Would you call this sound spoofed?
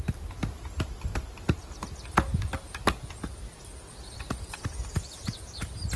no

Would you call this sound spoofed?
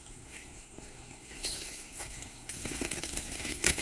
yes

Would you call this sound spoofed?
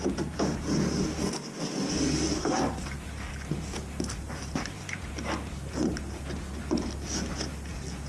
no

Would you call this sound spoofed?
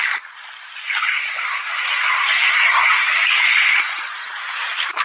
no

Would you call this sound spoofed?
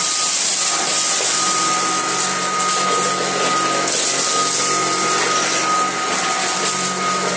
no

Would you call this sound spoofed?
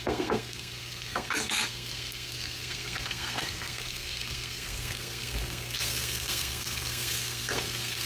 yes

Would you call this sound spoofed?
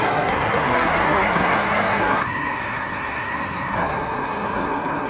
yes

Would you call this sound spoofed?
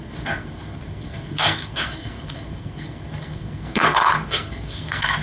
yes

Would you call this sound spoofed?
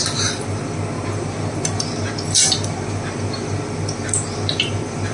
no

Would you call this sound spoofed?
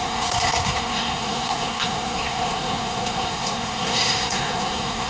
yes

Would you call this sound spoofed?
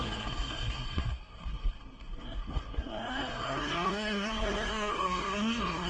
yes